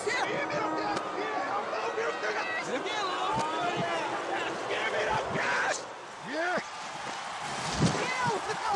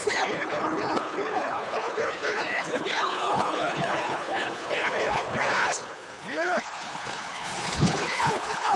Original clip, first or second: first